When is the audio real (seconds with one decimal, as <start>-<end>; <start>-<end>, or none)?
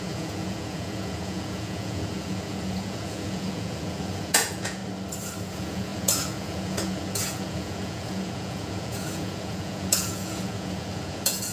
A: 4.8-5.4